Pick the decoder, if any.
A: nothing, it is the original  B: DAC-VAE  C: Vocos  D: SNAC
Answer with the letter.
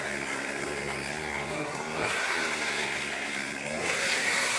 D